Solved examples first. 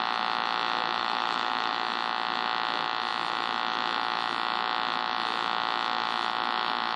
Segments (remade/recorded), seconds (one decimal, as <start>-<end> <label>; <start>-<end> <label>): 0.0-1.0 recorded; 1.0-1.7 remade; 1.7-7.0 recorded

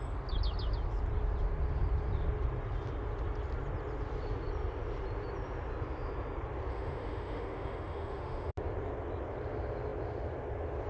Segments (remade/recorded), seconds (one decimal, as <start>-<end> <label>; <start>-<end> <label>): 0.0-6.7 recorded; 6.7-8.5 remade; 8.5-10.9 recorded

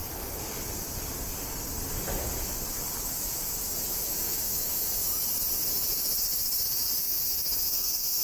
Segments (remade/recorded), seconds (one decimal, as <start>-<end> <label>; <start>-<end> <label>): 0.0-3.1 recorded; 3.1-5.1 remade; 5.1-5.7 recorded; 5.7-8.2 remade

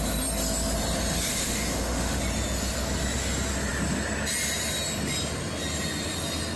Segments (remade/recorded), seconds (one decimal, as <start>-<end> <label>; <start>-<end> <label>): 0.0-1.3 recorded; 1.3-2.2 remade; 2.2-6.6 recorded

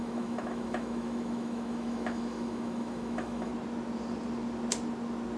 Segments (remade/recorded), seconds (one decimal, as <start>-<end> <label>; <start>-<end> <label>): 0.0-3.5 remade; 3.5-5.4 recorded

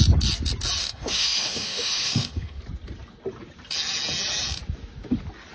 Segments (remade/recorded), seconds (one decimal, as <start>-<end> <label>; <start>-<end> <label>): 0.0-0.8 recorded; 0.8-2.6 remade; 2.6-5.5 recorded

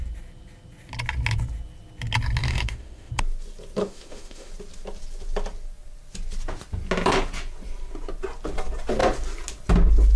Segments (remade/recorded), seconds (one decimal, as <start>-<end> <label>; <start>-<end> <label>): 0.0-2.4 recorded; 2.4-3.1 remade; 3.1-3.8 recorded; 3.8-4.5 remade; 4.5-10.2 recorded